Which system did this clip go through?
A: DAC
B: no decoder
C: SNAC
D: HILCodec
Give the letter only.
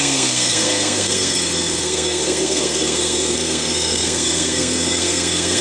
C